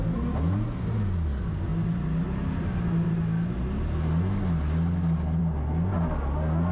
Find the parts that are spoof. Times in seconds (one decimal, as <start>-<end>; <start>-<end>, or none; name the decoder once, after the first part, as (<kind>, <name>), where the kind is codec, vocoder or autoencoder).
none